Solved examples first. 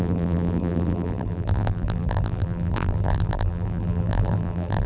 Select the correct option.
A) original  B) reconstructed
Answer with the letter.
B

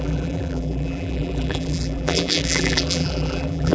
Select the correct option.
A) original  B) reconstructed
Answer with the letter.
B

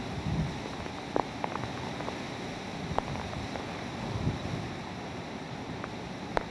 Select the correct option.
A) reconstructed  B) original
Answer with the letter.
B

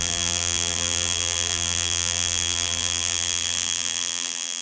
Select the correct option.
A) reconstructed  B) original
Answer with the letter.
A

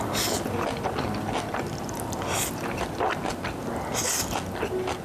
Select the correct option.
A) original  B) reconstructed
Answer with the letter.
A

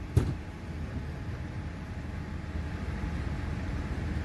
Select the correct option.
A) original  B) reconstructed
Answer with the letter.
B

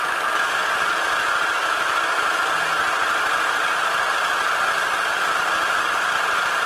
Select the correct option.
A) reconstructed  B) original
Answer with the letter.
B